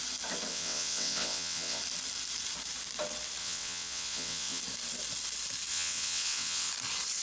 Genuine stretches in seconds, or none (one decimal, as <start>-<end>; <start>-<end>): 0.0-0.5; 1.8-3.4; 4.6-5.7; 6.7-7.2